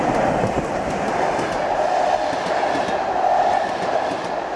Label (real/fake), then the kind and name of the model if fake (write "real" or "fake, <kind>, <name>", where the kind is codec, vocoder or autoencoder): real